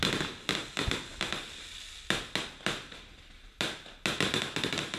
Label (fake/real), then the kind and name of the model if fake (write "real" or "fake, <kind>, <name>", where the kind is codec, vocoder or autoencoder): real